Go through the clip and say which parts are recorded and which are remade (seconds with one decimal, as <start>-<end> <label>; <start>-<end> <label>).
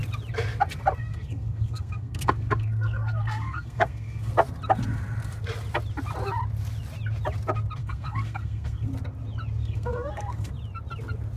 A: 0.0-1.0 recorded; 1.0-4.3 remade; 4.3-7.8 recorded; 7.8-8.9 remade; 8.9-9.6 recorded; 9.6-10.5 remade; 10.5-11.4 recorded